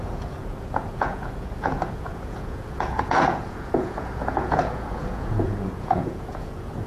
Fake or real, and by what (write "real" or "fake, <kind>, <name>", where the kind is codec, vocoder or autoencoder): fake, vocoder, Vocos